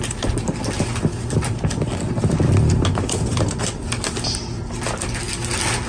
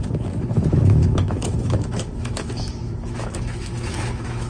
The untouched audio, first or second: first